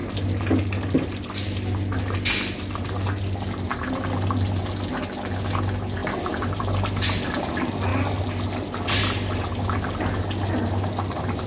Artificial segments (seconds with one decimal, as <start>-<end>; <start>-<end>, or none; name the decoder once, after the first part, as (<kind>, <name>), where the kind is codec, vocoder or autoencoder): none